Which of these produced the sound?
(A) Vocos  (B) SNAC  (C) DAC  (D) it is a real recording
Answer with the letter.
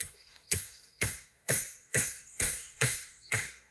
B